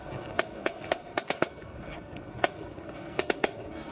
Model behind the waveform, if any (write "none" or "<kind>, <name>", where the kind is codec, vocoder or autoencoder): codec, SNAC